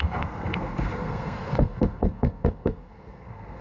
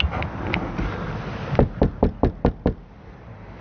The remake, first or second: first